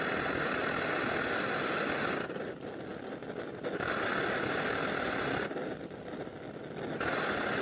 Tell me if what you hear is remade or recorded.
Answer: recorded